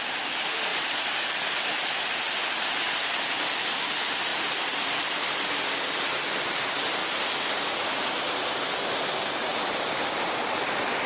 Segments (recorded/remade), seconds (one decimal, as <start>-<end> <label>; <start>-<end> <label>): 0.0-4.3 recorded; 4.3-6.6 remade; 6.6-7.0 recorded; 7.0-7.7 remade; 7.7-9.5 recorded; 9.5-10.1 remade; 10.1-11.1 recorded